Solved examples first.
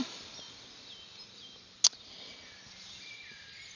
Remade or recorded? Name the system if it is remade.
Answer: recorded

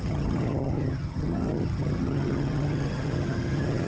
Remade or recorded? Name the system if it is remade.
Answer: remade, vocoder, HiFi-GAN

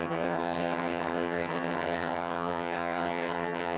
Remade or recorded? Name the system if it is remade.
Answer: remade, vocoder, HiFi-GAN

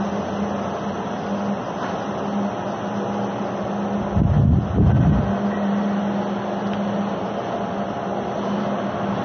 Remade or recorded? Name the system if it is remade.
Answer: recorded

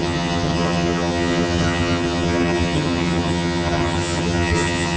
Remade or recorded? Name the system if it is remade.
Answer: remade, vocoder, HiFi-GAN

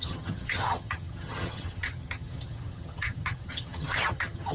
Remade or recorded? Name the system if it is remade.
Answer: remade, vocoder, HiFi-GAN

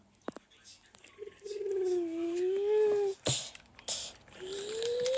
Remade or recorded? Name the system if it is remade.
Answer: recorded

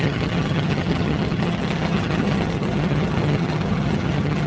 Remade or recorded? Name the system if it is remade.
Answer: remade, vocoder, HiFi-GAN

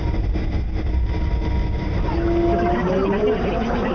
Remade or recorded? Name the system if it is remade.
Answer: recorded